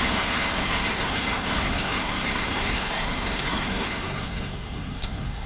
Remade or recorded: remade